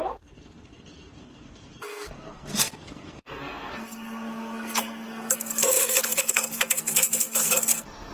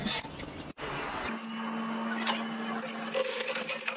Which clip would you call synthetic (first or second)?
first